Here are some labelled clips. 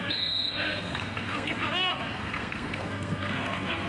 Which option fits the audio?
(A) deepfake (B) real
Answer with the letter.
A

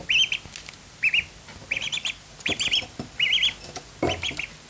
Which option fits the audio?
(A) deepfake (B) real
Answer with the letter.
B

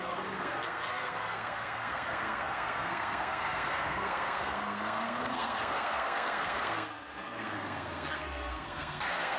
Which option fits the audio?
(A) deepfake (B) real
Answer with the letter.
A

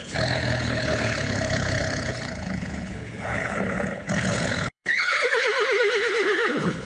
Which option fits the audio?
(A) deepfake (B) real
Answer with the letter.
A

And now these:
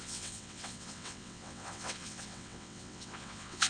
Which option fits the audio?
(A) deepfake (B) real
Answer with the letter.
A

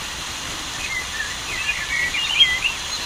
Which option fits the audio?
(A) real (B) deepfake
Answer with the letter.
A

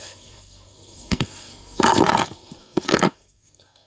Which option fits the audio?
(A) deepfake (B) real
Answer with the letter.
A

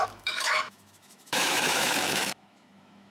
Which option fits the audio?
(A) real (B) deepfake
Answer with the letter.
B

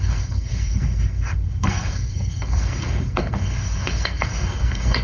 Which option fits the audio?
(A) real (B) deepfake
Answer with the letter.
B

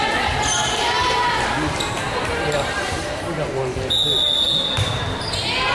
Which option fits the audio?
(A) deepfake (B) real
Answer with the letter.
B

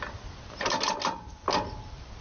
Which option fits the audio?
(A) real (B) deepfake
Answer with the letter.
A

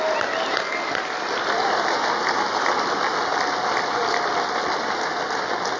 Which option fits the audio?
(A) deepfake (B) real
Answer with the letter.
B